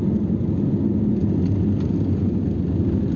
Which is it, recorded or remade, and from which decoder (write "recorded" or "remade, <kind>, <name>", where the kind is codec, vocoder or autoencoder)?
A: recorded